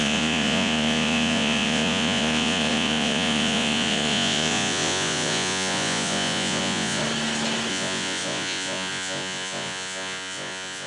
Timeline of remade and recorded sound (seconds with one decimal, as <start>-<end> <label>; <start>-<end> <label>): 0.0-7.0 remade; 7.0-7.7 recorded; 7.7-10.9 remade